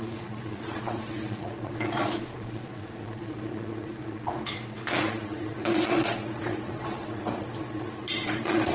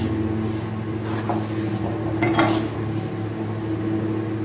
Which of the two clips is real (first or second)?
second